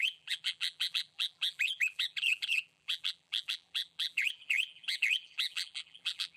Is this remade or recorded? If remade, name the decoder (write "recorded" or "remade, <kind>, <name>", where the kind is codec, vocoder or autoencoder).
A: remade, vocoder, BigVGAN v2